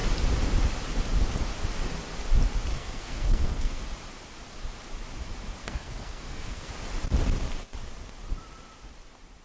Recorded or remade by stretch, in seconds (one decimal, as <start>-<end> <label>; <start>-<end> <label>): 0.0-2.7 recorded; 2.7-3.8 remade; 3.8-5.6 recorded; 5.6-6.7 remade; 6.7-9.4 recorded